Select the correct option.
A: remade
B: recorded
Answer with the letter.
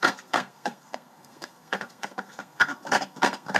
A